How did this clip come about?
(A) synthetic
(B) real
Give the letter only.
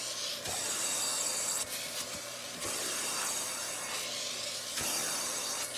B